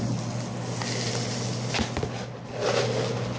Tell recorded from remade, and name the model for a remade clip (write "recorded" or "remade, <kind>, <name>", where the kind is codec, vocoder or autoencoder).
recorded